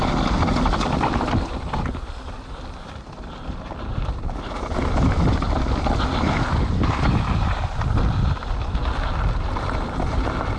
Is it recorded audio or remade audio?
recorded